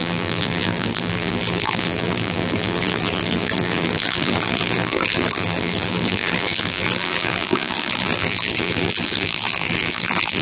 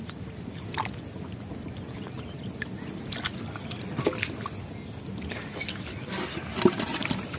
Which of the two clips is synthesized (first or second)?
first